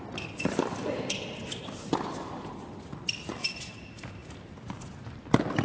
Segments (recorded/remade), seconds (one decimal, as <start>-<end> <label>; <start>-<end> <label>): 0.0-5.6 recorded